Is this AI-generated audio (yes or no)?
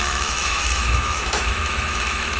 yes